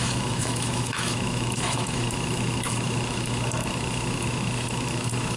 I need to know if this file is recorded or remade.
remade